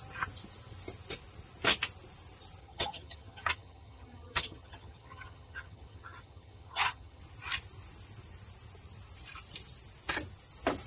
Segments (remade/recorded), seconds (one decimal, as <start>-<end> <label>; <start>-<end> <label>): 0.0-2.6 recorded; 2.6-7.2 remade; 7.2-10.9 recorded